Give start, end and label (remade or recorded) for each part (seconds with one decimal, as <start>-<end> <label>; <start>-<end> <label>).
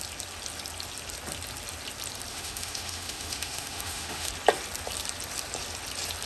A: 0.0-2.3 recorded; 2.3-4.3 remade; 4.3-6.3 recorded